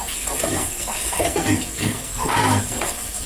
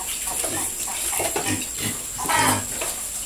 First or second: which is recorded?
second